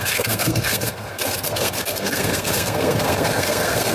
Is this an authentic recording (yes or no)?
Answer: no